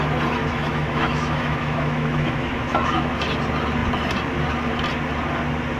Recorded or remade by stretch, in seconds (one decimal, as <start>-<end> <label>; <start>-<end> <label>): 0.0-0.4 recorded; 0.4-3.2 remade; 3.2-5.8 recorded